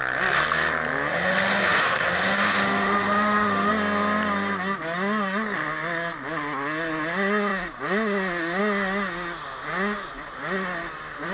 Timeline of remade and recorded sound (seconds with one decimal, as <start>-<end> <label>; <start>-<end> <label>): 0.0-1.1 recorded; 1.1-3.7 remade; 3.7-11.3 recorded